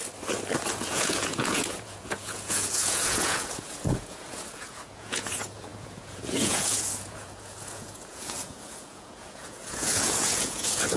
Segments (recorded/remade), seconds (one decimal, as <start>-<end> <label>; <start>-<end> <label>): 0.0-0.7 recorded; 0.7-11.0 remade